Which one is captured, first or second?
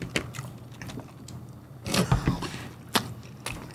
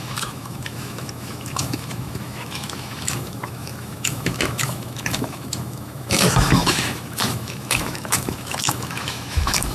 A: first